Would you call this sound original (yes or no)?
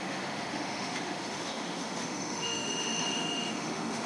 no